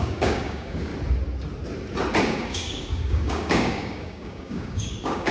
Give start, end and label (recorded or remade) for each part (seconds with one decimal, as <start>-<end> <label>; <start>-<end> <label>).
0.0-0.9 remade; 0.9-2.2 recorded; 2.2-5.3 remade